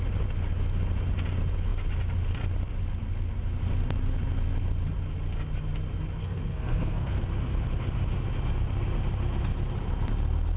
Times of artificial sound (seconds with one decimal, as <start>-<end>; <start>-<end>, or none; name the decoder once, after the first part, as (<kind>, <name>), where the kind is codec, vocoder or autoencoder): 6.2-7.2 (codec, SNAC)